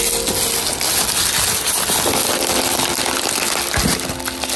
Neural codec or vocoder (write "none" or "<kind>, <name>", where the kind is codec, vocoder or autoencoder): none